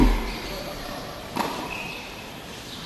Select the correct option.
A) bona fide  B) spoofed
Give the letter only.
B